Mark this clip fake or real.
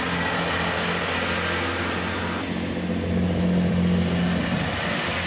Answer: real